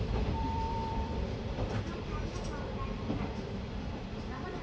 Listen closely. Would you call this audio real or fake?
fake